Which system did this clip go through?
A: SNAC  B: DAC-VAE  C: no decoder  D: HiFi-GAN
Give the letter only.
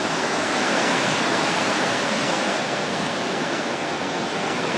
A